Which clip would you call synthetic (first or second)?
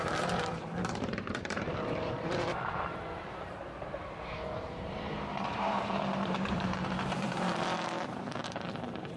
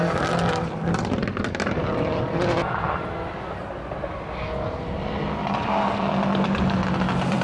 first